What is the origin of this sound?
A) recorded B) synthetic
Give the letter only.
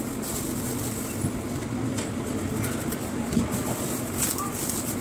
A